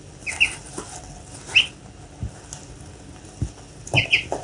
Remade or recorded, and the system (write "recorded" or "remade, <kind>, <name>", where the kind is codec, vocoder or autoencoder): recorded